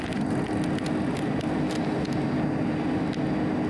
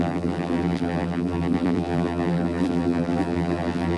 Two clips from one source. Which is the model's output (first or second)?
second